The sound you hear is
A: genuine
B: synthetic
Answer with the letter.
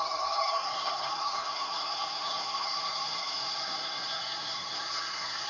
B